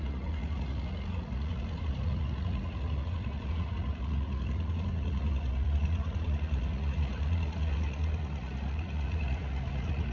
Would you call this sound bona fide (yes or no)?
no